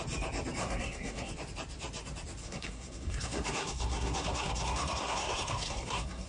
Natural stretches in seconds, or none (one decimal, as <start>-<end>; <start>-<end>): 0.0-0.6; 1.3-2.4